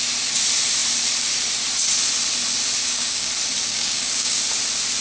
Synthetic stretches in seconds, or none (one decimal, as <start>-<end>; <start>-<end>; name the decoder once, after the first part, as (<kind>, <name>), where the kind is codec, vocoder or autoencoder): 2.8-3.3 (codec, DAC); 3.7-4.4